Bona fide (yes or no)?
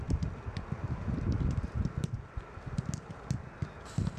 yes